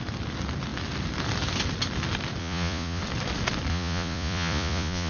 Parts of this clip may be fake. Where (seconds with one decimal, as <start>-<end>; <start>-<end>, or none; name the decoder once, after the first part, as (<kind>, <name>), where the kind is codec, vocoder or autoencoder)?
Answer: 2.4-3.0 (vocoder, Vocos); 3.7-5.1